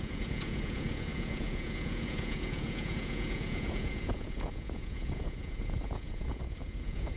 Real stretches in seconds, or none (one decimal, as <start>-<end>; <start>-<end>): none